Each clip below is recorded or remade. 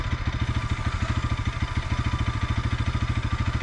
recorded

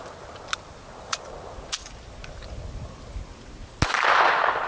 recorded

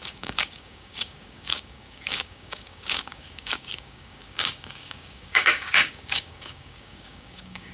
remade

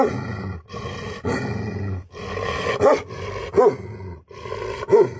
recorded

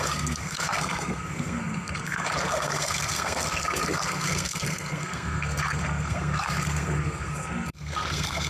remade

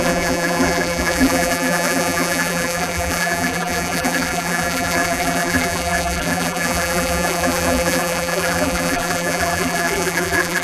remade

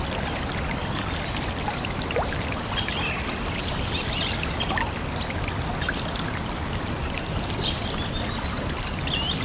recorded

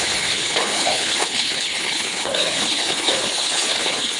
remade